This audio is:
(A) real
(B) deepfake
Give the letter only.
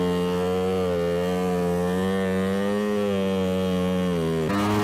A